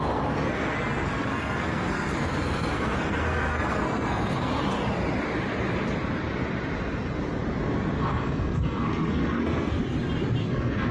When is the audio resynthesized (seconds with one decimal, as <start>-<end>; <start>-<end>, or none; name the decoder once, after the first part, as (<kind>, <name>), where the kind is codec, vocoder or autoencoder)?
0.0-4.5 (codec, SNAC); 8.0-9.8; 10.4-10.9